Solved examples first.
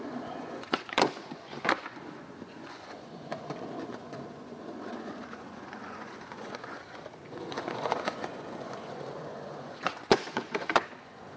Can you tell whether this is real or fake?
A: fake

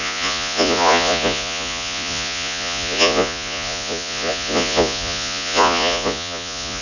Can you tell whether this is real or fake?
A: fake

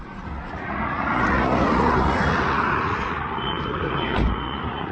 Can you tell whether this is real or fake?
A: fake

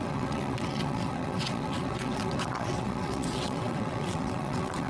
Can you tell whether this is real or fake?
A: fake